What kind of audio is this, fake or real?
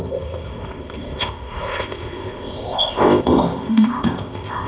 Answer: fake